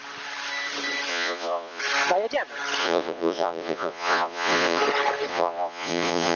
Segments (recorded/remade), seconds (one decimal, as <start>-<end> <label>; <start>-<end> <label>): 0.0-1.1 recorded; 1.1-1.8 remade; 1.8-2.8 recorded; 2.8-4.8 remade; 4.8-5.3 recorded; 5.3-6.4 remade